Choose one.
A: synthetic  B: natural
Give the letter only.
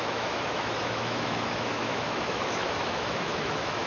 A